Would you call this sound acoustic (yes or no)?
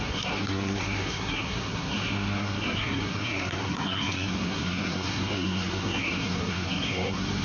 no